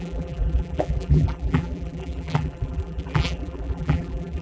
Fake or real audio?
fake